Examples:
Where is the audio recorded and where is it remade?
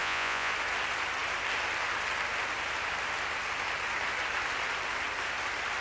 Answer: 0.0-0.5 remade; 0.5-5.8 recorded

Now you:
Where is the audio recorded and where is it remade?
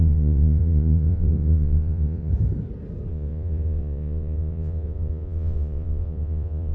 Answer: 0.0-2.3 remade; 2.3-3.1 recorded; 3.1-6.7 remade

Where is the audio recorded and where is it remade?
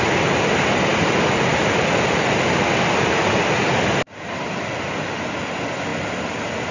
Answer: 0.0-6.7 recorded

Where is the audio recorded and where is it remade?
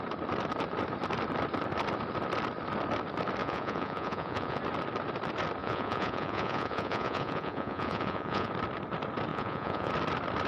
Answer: 0.0-3.4 recorded; 3.4-4.6 remade; 4.6-5.6 recorded; 5.6-8.5 remade; 8.5-9.3 recorded; 9.3-9.9 remade; 9.9-10.5 recorded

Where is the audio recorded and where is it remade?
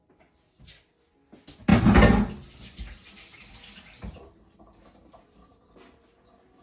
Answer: 0.0-6.6 recorded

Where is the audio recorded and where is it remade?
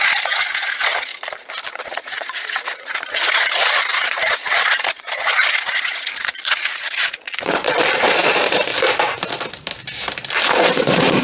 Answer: 0.0-1.1 remade; 1.1-1.7 recorded; 1.7-8.7 remade; 8.7-10.5 recorded; 10.5-11.2 remade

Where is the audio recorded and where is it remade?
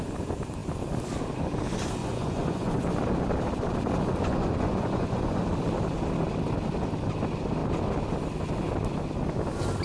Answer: 0.0-2.0 recorded; 2.0-2.8 remade; 2.8-4.2 recorded; 4.2-5.4 remade; 5.4-9.8 recorded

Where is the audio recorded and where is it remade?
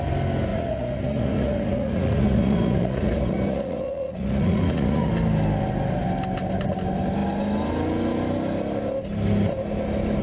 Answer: 0.0-0.5 recorded; 0.5-5.1 remade; 5.1-10.2 recorded